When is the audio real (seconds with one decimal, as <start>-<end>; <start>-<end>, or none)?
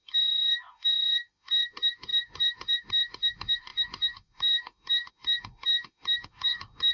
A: none